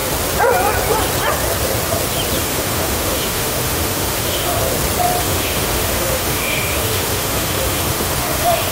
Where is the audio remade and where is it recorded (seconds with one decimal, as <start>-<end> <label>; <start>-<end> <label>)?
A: 0.0-2.4 recorded; 2.4-4.6 remade; 4.6-5.2 recorded; 5.2-8.7 remade